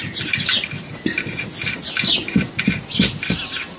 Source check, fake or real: real